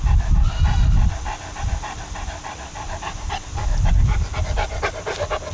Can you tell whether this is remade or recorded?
recorded